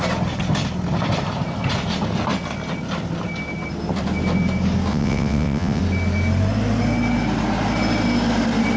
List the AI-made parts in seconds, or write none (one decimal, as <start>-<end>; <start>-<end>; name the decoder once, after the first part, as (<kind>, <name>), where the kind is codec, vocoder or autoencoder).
4.9-5.8 (vocoder, WaveNeXt)